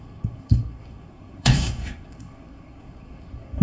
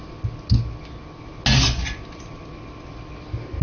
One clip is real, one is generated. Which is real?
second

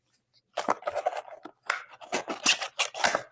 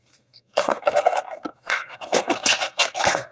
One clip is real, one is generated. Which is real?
first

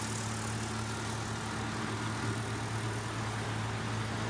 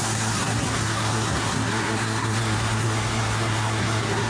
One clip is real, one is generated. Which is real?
first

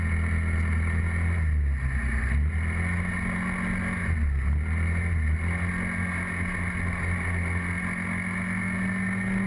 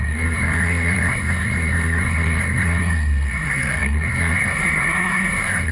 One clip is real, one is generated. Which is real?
first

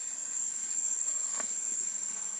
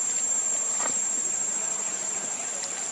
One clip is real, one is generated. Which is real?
second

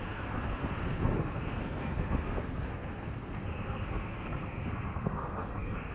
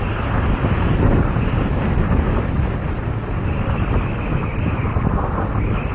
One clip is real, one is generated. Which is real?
second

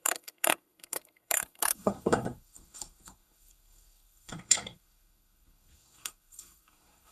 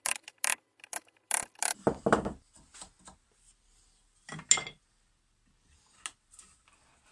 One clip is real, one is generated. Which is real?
second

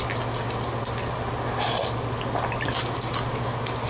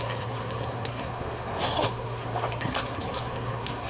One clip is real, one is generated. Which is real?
first